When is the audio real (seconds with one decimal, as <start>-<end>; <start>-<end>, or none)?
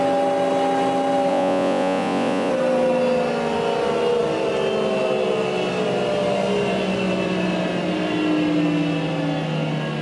0.0-1.3; 2.5-10.0